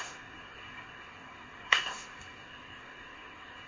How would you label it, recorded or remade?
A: remade